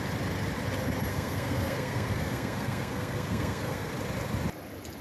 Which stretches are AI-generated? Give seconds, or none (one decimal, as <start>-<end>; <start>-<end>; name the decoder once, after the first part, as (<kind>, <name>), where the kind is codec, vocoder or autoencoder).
1.1-3.9 (codec, SNAC)